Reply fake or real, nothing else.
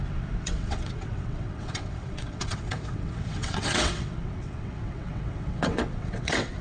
fake